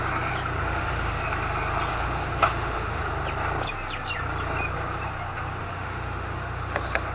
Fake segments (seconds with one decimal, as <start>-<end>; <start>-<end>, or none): 0.6-1.2; 1.9-3.0; 5.6-7.1